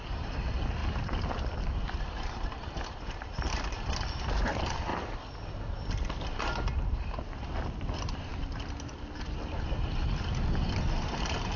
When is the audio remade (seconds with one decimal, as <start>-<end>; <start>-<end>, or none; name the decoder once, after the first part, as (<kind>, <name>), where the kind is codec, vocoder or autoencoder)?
none